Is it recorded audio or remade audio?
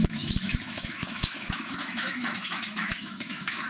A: remade